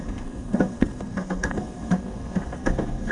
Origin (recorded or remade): remade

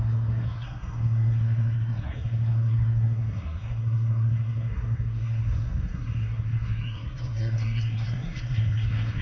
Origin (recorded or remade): remade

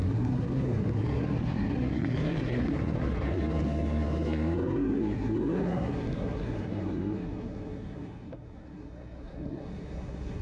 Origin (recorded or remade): remade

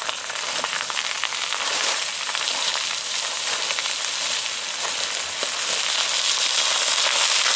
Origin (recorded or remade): recorded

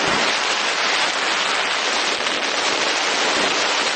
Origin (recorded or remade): recorded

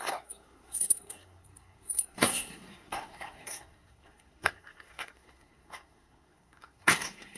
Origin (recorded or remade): remade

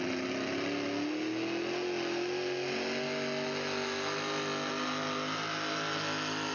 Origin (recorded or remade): recorded